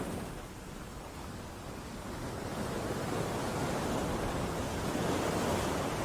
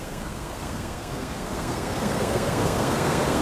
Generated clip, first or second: second